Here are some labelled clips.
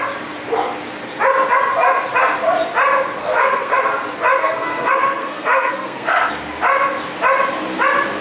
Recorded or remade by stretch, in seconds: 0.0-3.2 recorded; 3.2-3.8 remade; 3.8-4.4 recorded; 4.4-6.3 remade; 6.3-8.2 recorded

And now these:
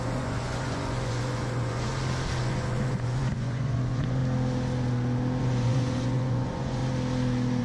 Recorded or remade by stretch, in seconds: 0.0-1.9 remade; 1.9-2.4 recorded; 2.4-4.2 remade; 4.2-5.4 recorded; 5.4-6.8 remade; 6.8-7.6 recorded